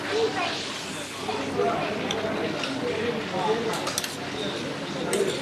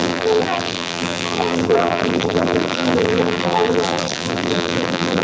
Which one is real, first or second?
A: first